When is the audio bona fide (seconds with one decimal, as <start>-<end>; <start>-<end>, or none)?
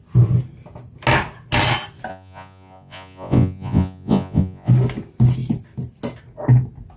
0.0-2.1; 4.7-7.0